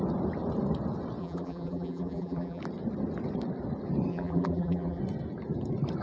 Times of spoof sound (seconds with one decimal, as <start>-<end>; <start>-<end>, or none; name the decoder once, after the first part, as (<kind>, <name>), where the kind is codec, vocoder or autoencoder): 1.2-2.6 (vocoder, BigVGAN v2); 4.1-5.0